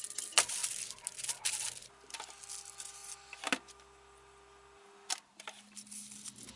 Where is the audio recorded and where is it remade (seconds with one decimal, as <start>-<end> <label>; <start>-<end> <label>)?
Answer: 0.0-6.6 recorded